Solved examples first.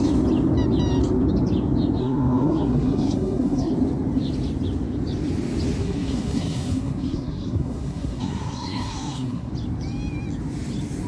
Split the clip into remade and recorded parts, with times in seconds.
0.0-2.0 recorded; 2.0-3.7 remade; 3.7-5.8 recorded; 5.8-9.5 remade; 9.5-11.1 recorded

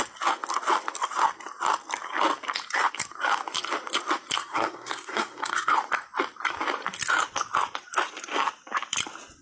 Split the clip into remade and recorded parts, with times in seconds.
0.0-4.4 recorded; 4.4-5.7 remade; 5.7-9.4 recorded

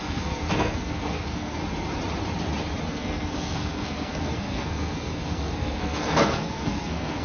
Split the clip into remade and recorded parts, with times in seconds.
0.0-1.6 remade; 1.6-2.9 recorded; 2.9-7.2 remade

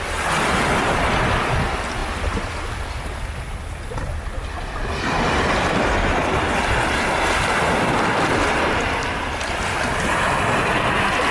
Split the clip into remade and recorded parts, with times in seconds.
0.0-11.3 recorded

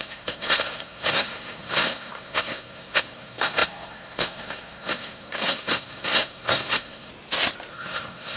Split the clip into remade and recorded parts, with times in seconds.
0.0-7.1 remade; 7.1-7.7 recorded; 7.7-8.4 remade

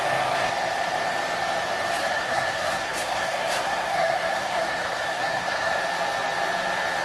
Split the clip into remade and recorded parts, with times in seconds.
0.0-2.0 recorded; 2.0-5.8 remade; 5.8-7.0 recorded